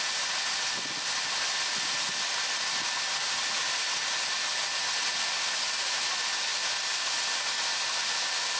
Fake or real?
real